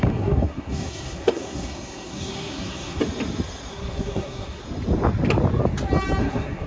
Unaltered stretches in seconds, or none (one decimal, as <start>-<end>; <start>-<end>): 3.0-3.7; 4.6-6.2